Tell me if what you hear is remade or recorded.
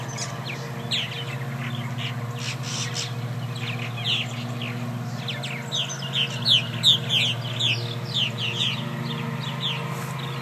recorded